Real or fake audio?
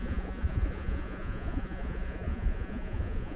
fake